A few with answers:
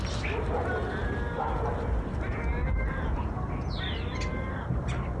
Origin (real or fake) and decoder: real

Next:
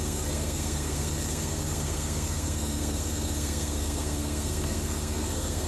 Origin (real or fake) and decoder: fake, codec, SNAC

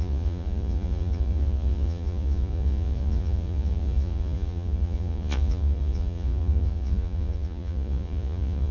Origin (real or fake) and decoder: fake, vocoder, Vocos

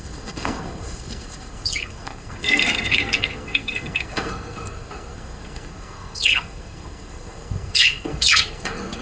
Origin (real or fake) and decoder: fake, codec, SNAC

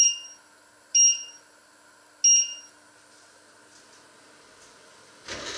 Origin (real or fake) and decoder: real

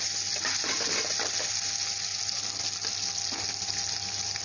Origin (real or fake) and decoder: real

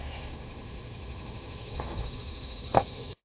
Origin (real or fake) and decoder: fake, autoencoder, DAC-VAE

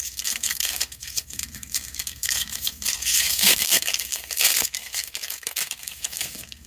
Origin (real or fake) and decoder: fake, codec, SNAC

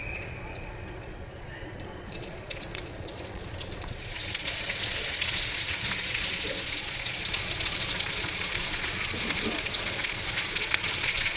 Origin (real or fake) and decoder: fake, vocoder, Vocos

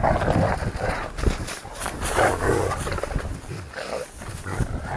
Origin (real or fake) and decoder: real